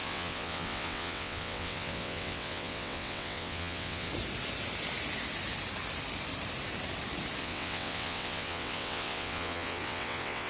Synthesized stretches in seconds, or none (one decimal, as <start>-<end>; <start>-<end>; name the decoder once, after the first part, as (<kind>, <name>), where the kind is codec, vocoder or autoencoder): 0.0-4.1 (vocoder, WaveNeXt); 7.4-10.5